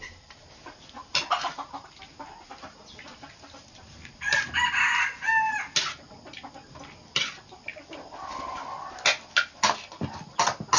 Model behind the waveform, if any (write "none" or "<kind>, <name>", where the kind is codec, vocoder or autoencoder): none